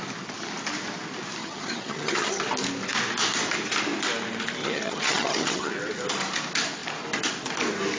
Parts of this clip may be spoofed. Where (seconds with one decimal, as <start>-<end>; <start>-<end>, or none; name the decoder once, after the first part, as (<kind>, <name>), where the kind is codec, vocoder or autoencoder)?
1.4-2.4 (vocoder, HiFi-GAN); 4.6-5.7